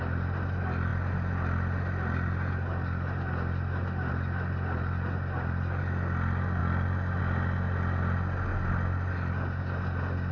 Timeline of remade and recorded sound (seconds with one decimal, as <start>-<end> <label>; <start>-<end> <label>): 0.0-10.3 recorded